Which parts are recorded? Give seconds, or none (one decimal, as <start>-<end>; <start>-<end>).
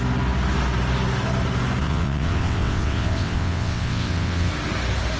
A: 0.0-1.8; 4.5-5.2